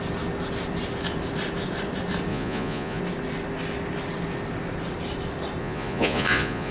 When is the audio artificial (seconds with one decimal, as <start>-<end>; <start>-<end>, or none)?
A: 2.3-3.0; 5.6-6.7